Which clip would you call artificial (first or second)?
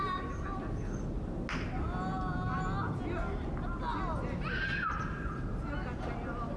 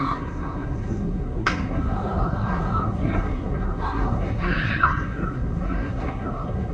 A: second